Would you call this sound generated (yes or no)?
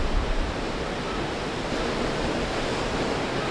yes